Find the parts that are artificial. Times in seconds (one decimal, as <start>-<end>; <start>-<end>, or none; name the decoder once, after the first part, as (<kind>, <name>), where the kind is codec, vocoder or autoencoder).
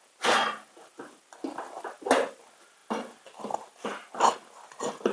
none